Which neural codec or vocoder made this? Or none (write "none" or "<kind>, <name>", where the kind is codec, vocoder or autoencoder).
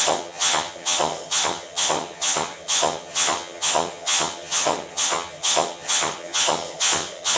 vocoder, HiFi-GAN